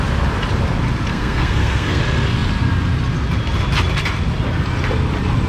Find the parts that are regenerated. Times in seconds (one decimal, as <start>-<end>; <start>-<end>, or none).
1.1-2.0